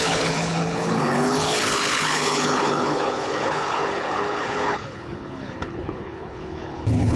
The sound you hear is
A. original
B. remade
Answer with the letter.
B